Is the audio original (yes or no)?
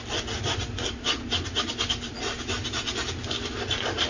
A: yes